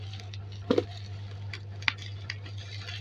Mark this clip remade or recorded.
recorded